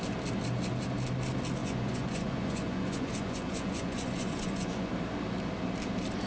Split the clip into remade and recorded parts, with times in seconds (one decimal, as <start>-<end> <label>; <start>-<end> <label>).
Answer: 0.0-1.6 recorded; 1.6-4.9 remade; 4.9-6.3 recorded

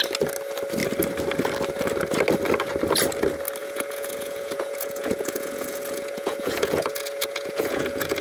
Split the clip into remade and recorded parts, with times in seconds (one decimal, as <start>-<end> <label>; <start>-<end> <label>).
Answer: 0.0-3.6 recorded; 3.6-8.2 remade

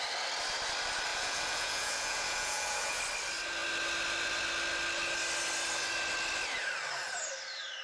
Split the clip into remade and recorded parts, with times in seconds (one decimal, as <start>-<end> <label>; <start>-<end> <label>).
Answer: 0.0-1.1 recorded; 1.1-3.0 remade; 3.0-7.8 recorded

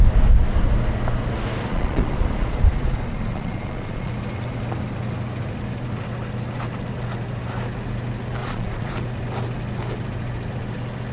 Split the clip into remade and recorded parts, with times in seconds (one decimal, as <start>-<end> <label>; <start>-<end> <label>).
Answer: 0.0-1.7 recorded; 1.7-4.1 remade; 4.1-8.4 recorded; 8.4-9.0 remade; 9.0-11.1 recorded

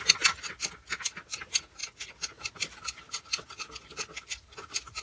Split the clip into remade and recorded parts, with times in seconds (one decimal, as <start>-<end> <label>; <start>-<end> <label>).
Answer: 0.0-5.0 recorded